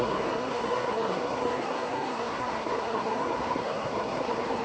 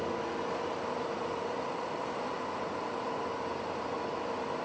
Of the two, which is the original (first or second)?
second